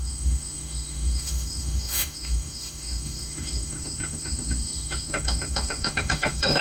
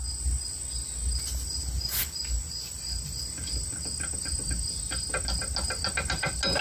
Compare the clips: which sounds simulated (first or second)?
first